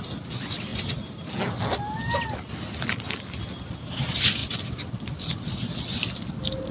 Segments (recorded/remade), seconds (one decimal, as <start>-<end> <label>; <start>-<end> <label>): 0.0-6.7 recorded